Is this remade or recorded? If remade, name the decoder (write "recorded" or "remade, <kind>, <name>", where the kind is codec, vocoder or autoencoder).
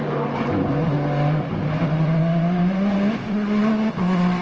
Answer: recorded